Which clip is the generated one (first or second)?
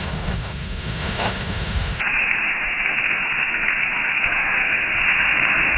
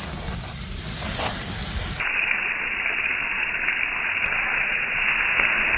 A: first